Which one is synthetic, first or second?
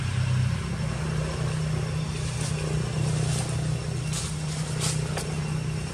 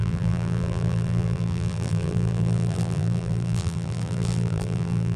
second